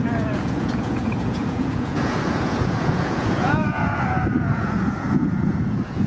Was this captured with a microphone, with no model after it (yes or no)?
no